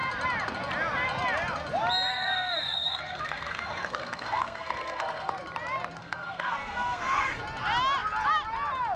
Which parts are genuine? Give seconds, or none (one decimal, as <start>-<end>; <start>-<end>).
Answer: 0.0-2.1; 5.3-6.0; 7.4-9.0